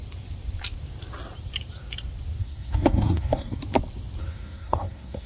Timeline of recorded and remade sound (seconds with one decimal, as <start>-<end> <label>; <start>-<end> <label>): 0.0-2.4 recorded; 2.4-3.6 remade; 3.6-4.2 recorded; 4.2-5.3 remade